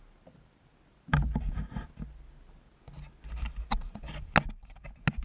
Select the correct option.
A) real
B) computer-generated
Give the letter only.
A